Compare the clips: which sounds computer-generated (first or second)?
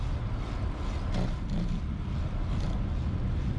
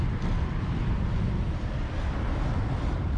second